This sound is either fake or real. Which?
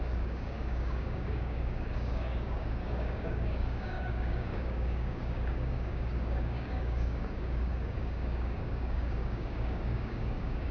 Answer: fake